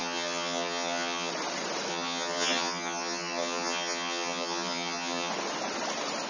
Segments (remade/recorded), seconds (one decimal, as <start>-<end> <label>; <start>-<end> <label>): 0.0-1.3 remade; 1.3-1.9 recorded; 1.9-5.3 remade; 5.3-6.3 recorded